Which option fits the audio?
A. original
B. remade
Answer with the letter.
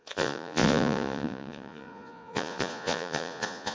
B